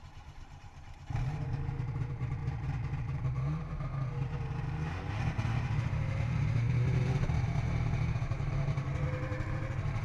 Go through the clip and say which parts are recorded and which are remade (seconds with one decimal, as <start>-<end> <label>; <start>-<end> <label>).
0.0-2.4 remade; 2.4-3.2 recorded; 3.2-10.0 remade

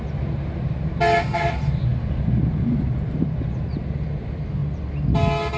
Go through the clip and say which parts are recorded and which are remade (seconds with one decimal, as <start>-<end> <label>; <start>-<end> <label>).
0.0-5.6 recorded